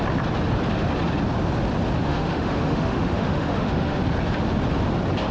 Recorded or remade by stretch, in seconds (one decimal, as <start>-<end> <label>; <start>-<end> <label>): 0.0-2.0 recorded; 2.0-4.0 remade; 4.0-5.3 recorded